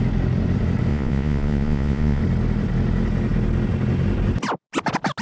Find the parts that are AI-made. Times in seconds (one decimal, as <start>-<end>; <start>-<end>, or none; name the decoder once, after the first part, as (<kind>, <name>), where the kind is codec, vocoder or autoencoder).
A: 0.9-2.2 (vocoder, Vocos)